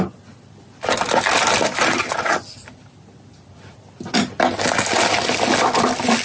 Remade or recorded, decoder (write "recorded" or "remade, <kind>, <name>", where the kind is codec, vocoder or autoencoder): recorded